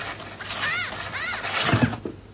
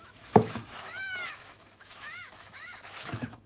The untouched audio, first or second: first